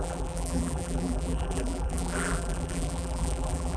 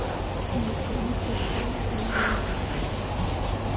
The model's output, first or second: first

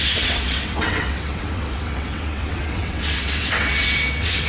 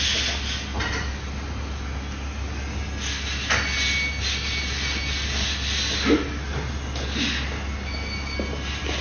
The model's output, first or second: first